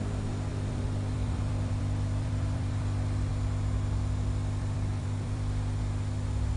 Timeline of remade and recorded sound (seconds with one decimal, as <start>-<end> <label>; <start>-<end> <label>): 0.0-0.5 recorded; 0.5-3.3 remade; 3.3-4.6 recorded; 4.6-5.8 remade; 5.8-6.6 recorded